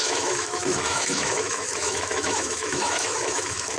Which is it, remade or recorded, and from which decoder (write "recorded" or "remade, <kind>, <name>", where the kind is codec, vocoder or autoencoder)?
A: remade, autoencoder, DAC-VAE